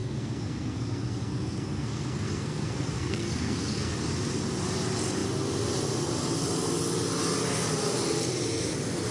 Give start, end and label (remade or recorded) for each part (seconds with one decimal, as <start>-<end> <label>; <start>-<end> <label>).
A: 0.0-4.0 remade; 4.0-9.1 recorded